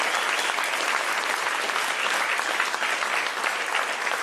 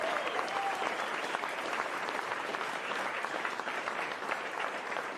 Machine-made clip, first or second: second